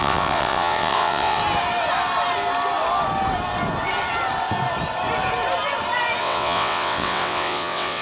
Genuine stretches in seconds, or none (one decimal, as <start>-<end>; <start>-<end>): 1.4-6.2